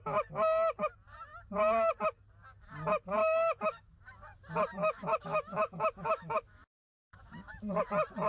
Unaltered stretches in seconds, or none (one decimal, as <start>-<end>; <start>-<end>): 0.0-3.2; 4.0-4.8; 7.6-8.3